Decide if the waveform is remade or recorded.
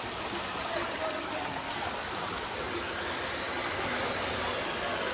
recorded